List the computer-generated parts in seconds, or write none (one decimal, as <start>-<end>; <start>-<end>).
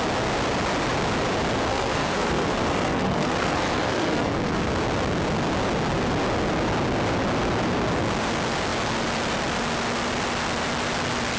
1.7-4.7